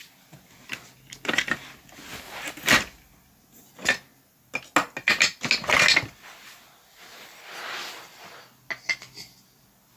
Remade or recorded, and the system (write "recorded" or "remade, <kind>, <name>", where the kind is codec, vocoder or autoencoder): recorded